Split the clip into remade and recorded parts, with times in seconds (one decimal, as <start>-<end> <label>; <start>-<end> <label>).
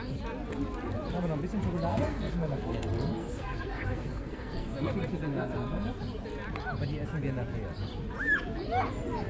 0.0-1.9 recorded; 1.9-5.9 remade; 5.9-9.3 recorded